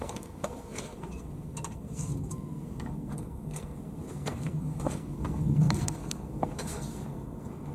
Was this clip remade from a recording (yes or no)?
yes